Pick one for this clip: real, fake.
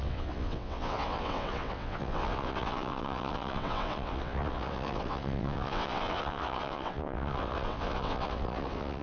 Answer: fake